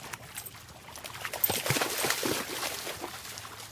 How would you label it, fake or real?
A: real